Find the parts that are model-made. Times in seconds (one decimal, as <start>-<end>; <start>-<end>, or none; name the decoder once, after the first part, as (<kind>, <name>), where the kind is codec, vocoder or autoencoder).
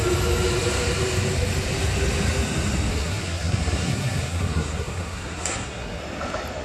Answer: 2.9-6.0 (codec, SNAC)